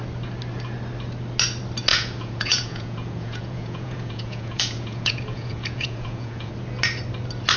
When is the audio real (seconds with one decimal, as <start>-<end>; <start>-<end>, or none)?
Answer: 0.0-1.9; 6.5-7.6